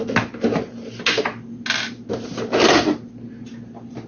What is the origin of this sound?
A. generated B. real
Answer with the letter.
B